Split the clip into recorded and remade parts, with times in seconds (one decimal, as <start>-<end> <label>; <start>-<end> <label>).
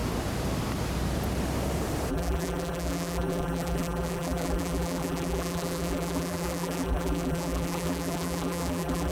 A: 0.0-2.1 recorded; 2.1-9.1 remade